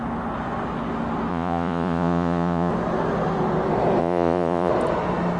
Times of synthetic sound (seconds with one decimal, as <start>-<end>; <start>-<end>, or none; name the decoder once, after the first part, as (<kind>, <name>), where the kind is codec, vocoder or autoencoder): 1.3-2.7 (vocoder, Vocos); 4.0-4.7